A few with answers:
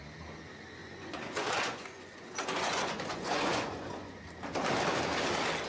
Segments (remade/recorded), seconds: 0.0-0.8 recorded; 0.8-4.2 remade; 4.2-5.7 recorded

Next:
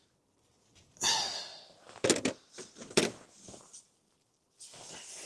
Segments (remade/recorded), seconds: 0.0-5.3 recorded

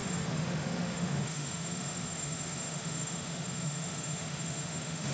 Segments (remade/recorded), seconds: 0.0-5.1 remade

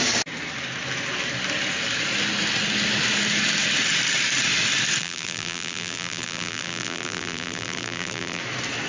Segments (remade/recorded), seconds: 0.0-5.0 recorded; 5.0-8.4 remade; 8.4-8.9 recorded

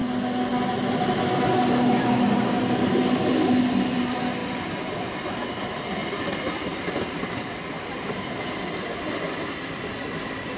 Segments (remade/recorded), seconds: 0.0-10.6 recorded